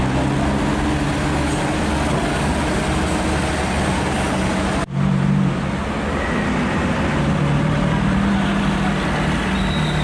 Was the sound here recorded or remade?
recorded